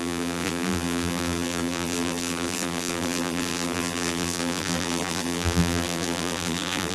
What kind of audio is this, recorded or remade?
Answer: remade